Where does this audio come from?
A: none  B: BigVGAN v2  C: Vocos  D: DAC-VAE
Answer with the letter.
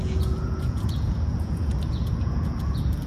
C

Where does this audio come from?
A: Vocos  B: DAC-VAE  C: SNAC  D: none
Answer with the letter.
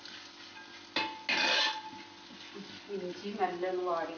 D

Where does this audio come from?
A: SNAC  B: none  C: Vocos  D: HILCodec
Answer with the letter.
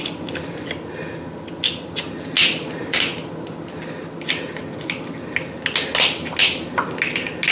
B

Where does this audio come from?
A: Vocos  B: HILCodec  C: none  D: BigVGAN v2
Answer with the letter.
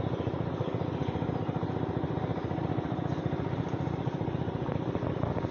C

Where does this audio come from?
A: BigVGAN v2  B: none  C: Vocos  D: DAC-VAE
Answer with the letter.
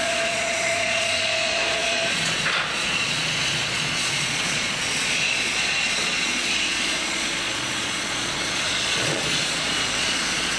C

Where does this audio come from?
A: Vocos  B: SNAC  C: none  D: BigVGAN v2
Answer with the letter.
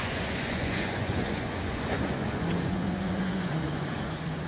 A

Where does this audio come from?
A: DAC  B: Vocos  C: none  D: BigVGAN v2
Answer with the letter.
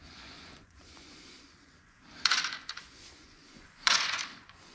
B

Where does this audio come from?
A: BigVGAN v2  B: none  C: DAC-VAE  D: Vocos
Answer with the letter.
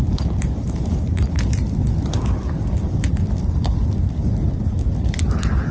B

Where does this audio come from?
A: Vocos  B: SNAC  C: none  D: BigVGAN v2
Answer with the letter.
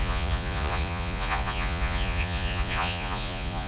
A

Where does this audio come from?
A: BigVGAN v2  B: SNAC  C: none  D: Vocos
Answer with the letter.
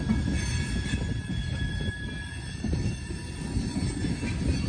C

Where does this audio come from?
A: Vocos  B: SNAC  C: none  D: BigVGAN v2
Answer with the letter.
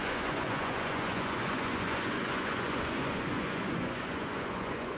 A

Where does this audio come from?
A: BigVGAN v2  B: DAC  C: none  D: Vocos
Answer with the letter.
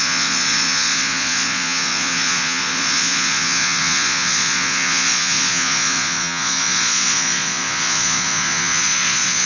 D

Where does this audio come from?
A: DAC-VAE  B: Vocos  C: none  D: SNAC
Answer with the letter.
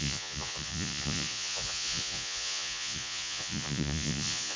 B